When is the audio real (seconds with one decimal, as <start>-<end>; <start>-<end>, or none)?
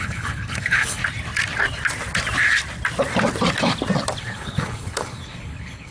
1.0-4.2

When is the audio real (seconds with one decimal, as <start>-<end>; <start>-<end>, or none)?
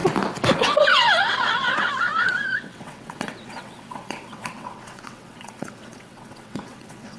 0.0-0.5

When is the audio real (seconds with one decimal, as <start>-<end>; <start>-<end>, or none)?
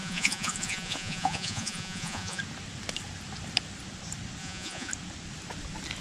2.4-4.4; 4.9-6.0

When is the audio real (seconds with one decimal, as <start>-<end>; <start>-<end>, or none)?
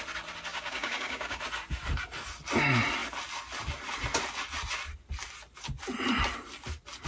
0.0-0.5; 1.4-7.1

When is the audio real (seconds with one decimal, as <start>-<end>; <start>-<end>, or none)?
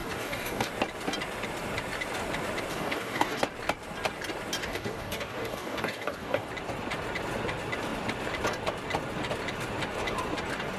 0.7-2.7; 3.4-4.6; 6.5-10.8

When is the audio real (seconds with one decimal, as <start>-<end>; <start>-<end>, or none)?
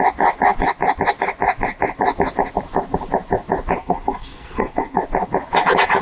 0.0-3.8; 5.0-6.0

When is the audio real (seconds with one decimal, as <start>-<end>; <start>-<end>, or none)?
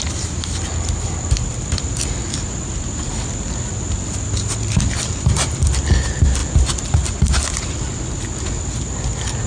0.0-9.5